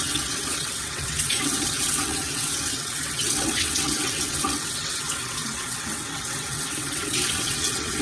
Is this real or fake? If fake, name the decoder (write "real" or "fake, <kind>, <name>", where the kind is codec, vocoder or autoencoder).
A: fake, vocoder, WaveNeXt